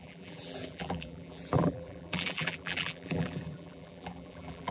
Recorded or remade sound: remade